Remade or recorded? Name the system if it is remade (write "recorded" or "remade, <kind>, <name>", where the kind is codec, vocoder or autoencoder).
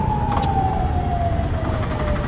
recorded